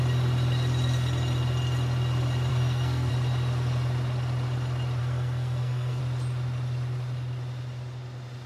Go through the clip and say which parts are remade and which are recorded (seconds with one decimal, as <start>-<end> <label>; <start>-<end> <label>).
0.0-2.5 recorded; 2.5-3.1 remade; 3.1-5.0 recorded; 5.0-6.0 remade; 6.0-8.5 recorded